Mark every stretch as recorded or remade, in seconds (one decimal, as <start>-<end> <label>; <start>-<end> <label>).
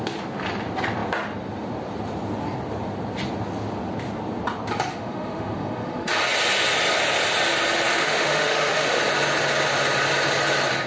0.0-4.9 recorded; 4.9-6.1 remade; 6.1-7.9 recorded; 7.9-9.0 remade; 9.0-10.9 recorded